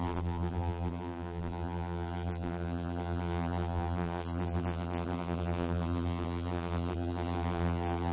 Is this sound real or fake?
fake